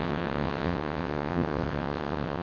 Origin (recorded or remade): remade